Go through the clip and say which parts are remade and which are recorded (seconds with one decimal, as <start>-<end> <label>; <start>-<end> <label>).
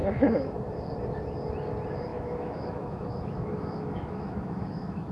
0.0-0.5 remade; 0.5-2.1 recorded; 2.1-5.1 remade